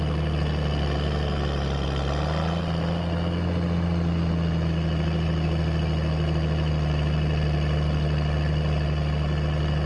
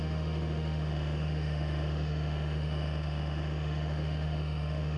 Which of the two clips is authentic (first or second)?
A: first